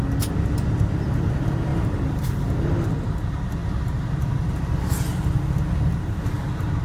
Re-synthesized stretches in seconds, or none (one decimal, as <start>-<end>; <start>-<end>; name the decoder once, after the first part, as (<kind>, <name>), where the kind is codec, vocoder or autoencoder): 1.7-2.5 (vocoder, BigVGAN v2); 3.6-6.8